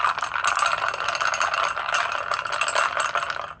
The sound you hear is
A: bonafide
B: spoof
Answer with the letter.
A